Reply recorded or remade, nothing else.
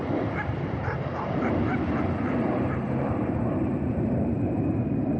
remade